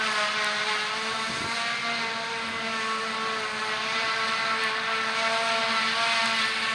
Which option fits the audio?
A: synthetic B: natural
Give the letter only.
B